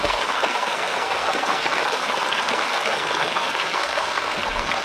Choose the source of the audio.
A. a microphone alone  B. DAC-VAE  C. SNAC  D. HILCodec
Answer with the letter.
C